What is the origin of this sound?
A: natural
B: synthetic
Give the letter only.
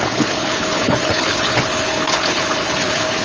B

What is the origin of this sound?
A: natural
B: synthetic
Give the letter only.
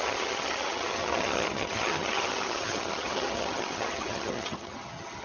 B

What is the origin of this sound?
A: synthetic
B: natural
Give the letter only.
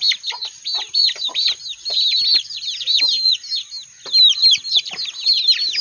B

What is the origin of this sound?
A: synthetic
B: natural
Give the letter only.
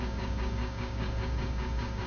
A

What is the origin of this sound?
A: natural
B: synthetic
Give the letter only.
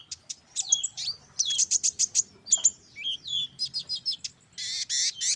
A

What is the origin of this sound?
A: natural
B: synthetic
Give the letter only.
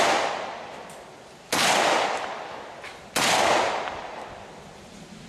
A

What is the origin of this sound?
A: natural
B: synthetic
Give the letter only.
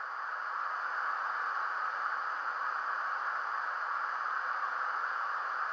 B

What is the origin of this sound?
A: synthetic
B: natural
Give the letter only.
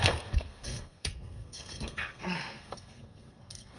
A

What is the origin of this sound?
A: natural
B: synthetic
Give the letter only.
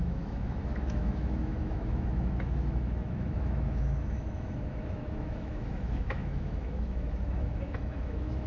B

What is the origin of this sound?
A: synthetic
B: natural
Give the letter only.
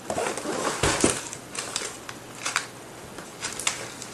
B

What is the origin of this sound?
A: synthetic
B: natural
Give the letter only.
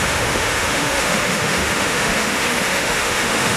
A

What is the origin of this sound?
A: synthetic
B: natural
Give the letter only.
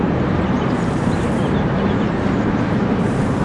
A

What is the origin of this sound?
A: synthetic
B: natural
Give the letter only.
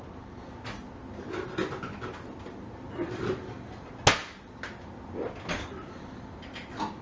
B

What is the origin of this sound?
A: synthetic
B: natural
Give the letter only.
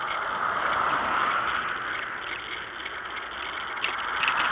B